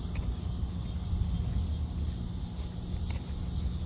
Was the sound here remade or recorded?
recorded